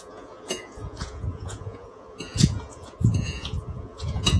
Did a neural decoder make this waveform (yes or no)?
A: yes